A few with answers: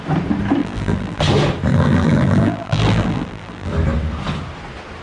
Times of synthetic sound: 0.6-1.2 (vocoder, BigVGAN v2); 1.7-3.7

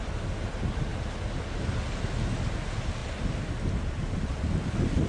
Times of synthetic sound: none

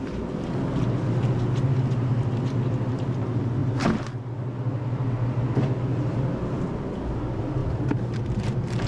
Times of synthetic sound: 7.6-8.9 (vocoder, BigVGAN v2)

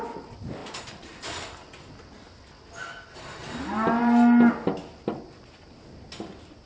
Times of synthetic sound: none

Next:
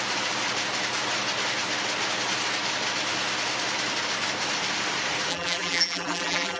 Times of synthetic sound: 5.3-6.6 (vocoder, BigVGAN v2)

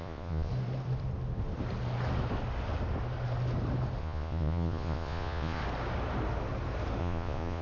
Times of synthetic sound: 0.0-0.5 (vocoder, Vocos); 4.0-5.6; 7.0-7.6